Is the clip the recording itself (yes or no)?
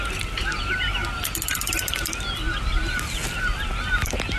yes